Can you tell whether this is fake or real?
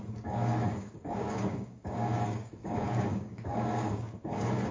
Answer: fake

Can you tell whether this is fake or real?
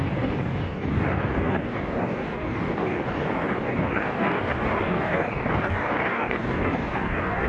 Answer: fake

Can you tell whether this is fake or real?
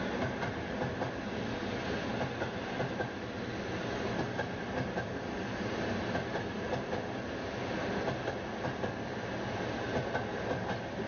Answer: real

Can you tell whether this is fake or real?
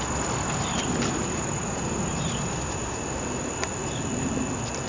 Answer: real